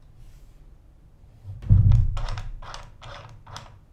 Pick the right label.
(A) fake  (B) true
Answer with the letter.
B